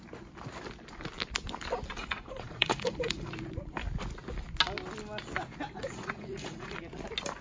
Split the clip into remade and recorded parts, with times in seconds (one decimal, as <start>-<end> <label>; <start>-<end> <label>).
0.0-2.0 recorded; 2.0-3.3 remade; 3.3-5.8 recorded; 5.8-6.8 remade; 6.8-7.4 recorded